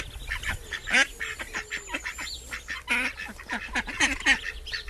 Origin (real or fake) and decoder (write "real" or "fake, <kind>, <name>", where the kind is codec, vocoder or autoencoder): real